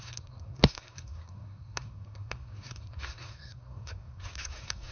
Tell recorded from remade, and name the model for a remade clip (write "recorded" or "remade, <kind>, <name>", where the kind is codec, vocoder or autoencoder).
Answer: remade, codec, SNAC